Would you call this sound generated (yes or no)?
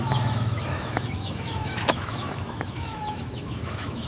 yes